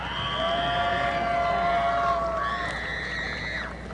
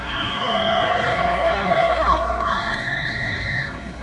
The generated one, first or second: second